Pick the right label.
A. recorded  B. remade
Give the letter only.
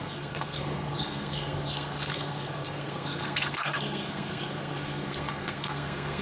B